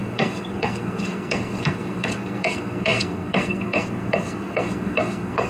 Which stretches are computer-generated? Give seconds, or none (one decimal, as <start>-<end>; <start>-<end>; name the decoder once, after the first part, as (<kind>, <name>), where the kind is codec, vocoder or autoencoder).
0.0-5.5 (codec, SNAC)